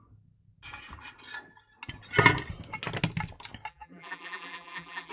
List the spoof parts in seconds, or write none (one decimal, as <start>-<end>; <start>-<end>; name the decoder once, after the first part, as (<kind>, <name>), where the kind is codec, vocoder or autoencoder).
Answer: 3.7-5.1 (vocoder, BigVGAN v2)